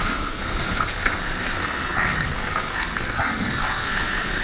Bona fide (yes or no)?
no